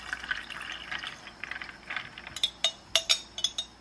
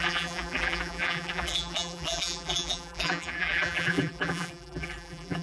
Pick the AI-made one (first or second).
second